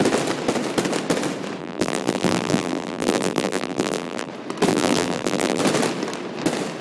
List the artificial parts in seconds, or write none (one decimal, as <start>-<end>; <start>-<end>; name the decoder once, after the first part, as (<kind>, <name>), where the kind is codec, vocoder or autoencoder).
1.6-4.3 (vocoder, BigVGAN v2); 4.7-5.6